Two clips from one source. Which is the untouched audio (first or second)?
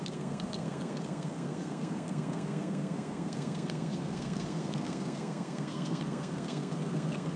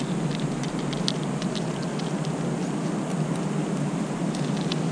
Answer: second